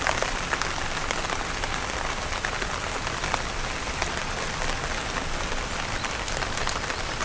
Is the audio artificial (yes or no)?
no